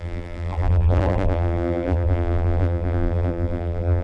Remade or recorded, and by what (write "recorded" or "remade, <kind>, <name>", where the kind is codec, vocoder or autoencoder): remade, vocoder, BigVGAN v2